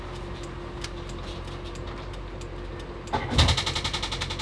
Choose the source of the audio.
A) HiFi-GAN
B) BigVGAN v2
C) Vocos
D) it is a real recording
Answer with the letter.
D